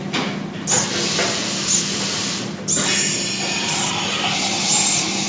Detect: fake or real real